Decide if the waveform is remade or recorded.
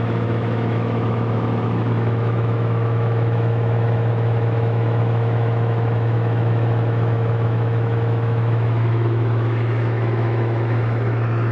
remade